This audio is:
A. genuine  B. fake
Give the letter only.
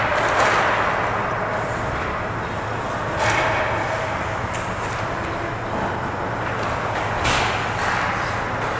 A